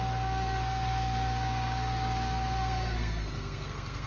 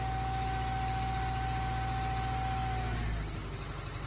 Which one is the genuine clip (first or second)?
second